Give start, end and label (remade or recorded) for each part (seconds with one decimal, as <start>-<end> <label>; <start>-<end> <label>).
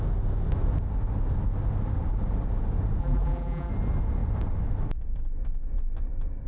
0.0-3.0 recorded; 3.0-3.7 remade; 3.7-6.5 recorded